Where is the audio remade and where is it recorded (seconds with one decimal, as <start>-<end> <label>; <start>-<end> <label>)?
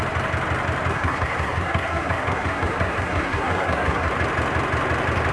0.0-0.9 recorded; 0.9-4.1 remade; 4.1-5.3 recorded